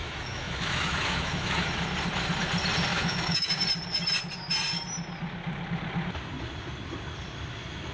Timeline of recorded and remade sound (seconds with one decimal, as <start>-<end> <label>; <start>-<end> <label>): 0.0-1.7 remade; 1.7-2.9 recorded; 2.9-3.5 remade; 3.5-7.9 recorded